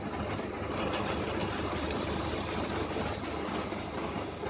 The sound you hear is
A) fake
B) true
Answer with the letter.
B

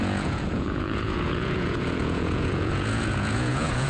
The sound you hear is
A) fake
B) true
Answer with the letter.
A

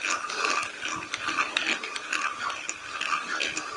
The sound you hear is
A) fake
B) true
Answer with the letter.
B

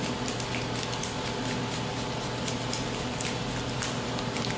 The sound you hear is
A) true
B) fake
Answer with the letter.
A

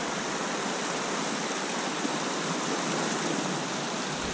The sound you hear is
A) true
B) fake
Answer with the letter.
A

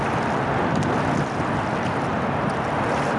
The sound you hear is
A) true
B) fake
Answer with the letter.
A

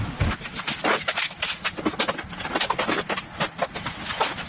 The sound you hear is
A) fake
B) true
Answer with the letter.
B